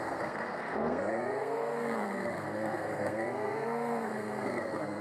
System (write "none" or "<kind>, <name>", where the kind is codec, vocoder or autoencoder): codec, SNAC